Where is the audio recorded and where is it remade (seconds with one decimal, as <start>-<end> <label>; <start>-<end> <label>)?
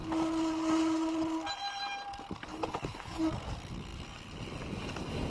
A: 0.0-2.5 recorded; 2.5-3.2 remade; 3.2-5.3 recorded